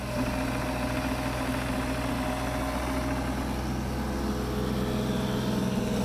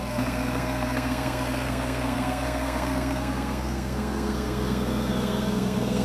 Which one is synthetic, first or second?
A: second